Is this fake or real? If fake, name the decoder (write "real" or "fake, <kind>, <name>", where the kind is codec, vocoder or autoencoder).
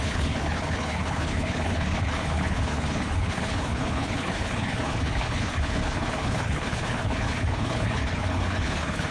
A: fake, codec, HILCodec